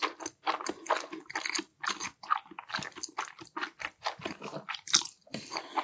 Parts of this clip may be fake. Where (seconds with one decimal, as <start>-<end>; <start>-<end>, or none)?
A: none